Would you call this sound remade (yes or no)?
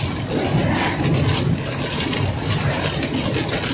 no